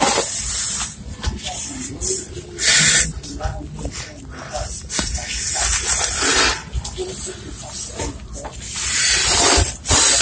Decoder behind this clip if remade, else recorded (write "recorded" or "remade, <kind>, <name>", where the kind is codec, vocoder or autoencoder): remade, vocoder, BigVGAN v2